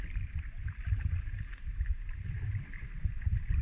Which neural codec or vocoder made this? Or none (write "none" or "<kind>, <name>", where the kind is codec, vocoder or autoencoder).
vocoder, BigVGAN v2